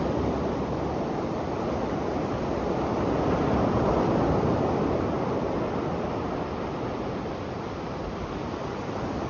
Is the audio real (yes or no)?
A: no